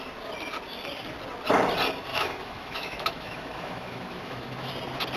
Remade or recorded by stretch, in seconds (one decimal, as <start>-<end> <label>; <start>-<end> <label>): 0.0-2.1 recorded; 2.1-4.7 remade; 4.7-5.2 recorded